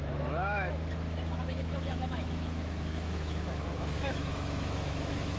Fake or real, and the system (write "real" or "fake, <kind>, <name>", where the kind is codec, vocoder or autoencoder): fake, autoencoder, DAC-VAE